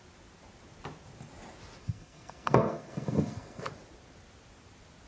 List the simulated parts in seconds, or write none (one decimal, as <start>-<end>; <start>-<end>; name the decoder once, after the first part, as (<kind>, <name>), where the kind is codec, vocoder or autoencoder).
1.8-3.7 (codec, SNAC)